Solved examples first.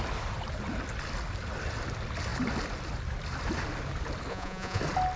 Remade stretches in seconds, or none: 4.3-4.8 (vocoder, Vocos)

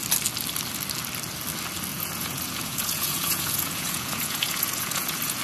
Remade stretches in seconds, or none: 1.9-5.4 (vocoder, Vocos)

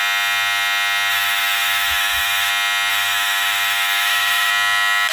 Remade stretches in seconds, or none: 1.1-2.5 (autoencoder, DAC-VAE); 2.9-4.5

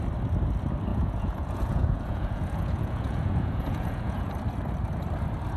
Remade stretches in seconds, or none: 0.9-4.3 (vocoder, Vocos)